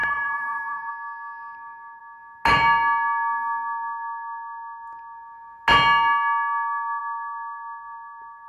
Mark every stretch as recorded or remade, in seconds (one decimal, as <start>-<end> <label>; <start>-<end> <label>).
0.0-0.9 remade; 0.9-8.5 recorded